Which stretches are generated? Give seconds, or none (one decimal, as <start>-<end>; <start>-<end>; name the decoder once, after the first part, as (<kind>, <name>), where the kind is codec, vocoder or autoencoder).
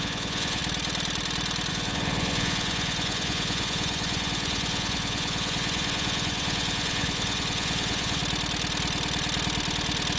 0.0-0.6 (vocoder, Vocos); 1.7-8.2